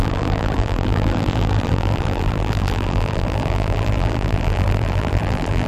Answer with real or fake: fake